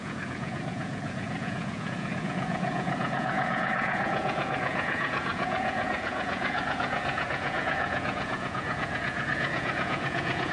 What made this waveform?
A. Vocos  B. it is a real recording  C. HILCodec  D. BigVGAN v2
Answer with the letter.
A